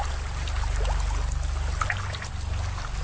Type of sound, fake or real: real